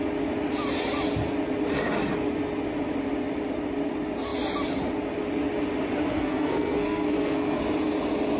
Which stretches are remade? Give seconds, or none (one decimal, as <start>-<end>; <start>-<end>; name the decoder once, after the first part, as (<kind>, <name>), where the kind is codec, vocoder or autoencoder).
6.1-7.6 (codec, SNAC)